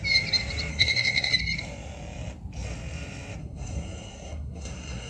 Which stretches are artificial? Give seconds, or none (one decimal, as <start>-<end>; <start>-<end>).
0.7-1.3; 3.4-5.1